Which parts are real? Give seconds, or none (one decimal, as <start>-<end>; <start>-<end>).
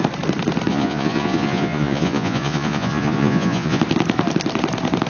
0.0-0.7; 3.8-5.1